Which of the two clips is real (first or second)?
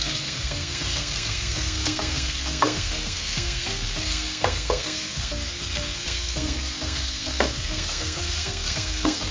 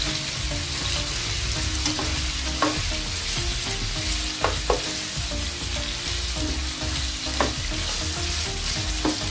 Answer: second